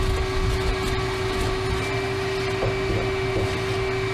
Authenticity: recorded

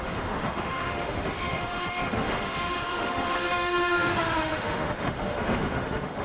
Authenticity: remade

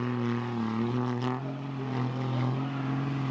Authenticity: recorded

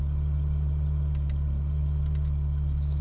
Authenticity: recorded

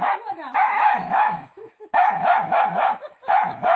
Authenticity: remade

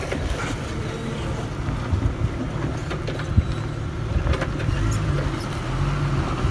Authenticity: recorded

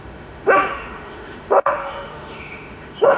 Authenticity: remade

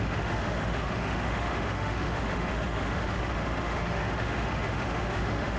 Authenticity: remade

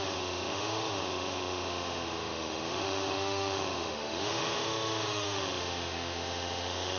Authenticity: remade